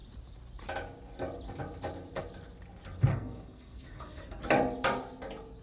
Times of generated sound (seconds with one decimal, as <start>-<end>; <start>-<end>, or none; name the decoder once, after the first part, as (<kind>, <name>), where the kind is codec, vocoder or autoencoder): 3.1-4.4 (codec, SNAC)